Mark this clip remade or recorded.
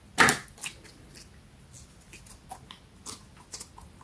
recorded